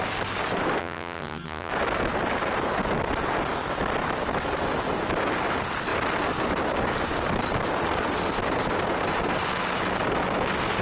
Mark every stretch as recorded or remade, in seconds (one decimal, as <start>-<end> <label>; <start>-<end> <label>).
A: 0.0-0.8 recorded; 0.8-1.7 remade; 1.7-10.8 recorded